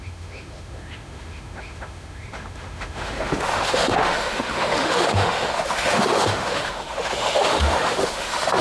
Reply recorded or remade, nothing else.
remade